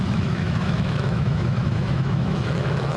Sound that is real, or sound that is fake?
fake